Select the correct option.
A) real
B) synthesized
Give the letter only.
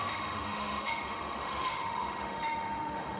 B